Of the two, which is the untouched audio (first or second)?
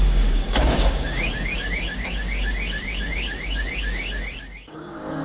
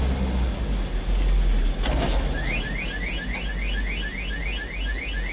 second